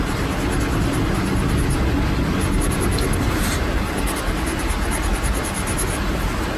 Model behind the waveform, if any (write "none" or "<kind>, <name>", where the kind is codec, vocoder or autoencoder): none